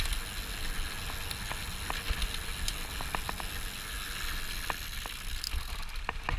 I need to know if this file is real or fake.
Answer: real